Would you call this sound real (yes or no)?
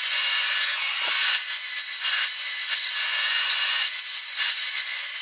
no